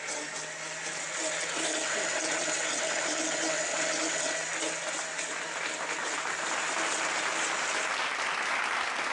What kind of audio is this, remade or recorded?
recorded